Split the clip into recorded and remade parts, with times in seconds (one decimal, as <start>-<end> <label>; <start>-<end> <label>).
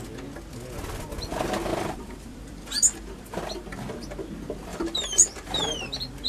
0.0-1.7 recorded; 1.7-3.4 remade; 3.4-4.7 recorded; 4.7-6.3 remade